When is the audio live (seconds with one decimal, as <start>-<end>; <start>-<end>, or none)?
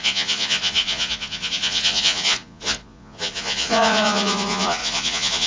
none